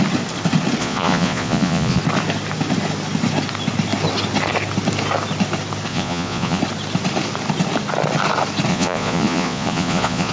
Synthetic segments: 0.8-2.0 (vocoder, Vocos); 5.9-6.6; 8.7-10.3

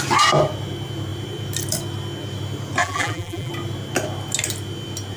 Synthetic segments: 2.8-3.5 (vocoder, BigVGAN v2)

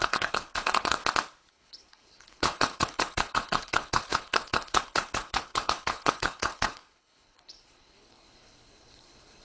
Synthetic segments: 0.0-1.0 (codec, HILCodec); 1.5-9.4

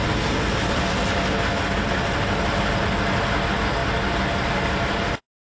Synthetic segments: none

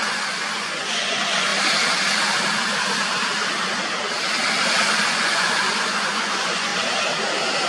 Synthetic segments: 0.0-1.5 (vocoder, Vocos); 4.9-6.7

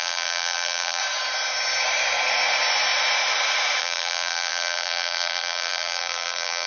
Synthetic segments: 0.0-1.0 (vocoder, BigVGAN v2); 3.8-6.7

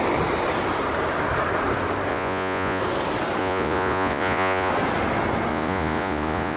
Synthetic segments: 2.1-2.8 (vocoder, Vocos); 3.4-4.7; 5.5-6.6